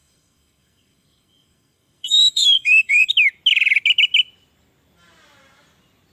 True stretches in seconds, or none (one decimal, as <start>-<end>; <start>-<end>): 3.1-6.1